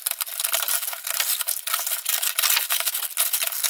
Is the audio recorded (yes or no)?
yes